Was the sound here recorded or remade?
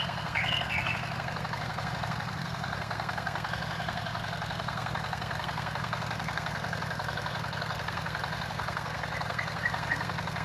remade